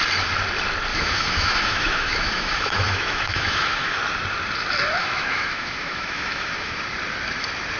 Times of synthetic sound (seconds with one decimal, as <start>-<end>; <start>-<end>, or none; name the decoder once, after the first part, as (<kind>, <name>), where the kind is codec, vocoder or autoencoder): 0.9-4.0 (autoencoder, DAC-VAE); 5.0-6.8